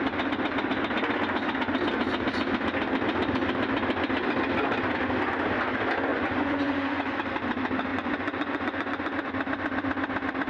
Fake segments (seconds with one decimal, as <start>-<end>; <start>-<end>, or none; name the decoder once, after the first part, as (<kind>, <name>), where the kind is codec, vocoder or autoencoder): 6.1-7.0 (vocoder, Vocos); 7.9-9.3